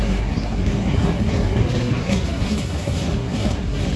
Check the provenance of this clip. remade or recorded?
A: remade